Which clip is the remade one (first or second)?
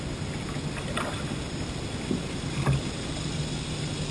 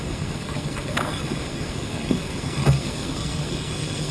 second